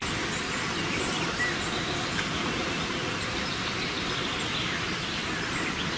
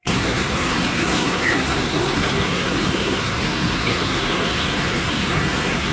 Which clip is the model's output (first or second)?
second